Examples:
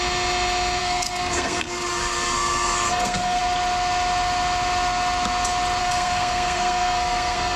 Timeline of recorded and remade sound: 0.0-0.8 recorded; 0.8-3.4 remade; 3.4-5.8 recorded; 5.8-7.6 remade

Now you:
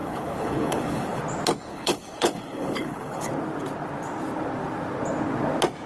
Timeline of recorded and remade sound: 0.0-1.2 remade; 1.2-1.7 recorded; 1.7-3.3 remade; 3.3-5.9 recorded